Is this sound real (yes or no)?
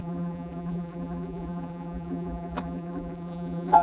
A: no